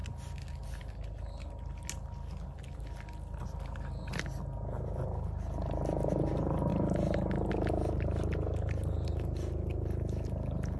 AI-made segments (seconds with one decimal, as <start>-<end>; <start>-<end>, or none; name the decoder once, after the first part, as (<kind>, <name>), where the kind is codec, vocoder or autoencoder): 6.7-7.5 (vocoder, BigVGAN v2)